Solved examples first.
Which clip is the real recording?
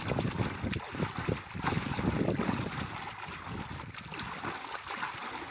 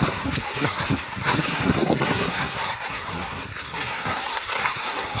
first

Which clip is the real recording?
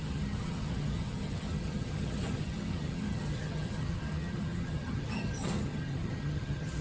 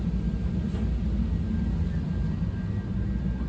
second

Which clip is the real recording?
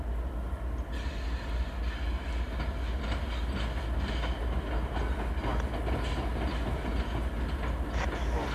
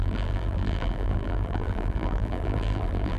first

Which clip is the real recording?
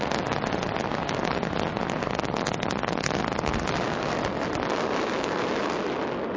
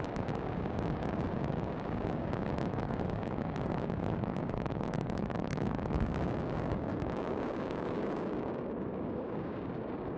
first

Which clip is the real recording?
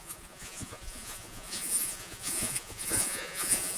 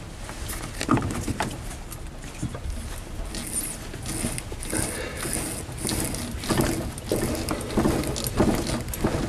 second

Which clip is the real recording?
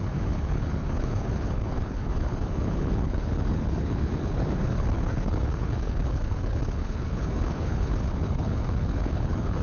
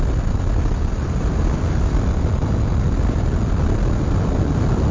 second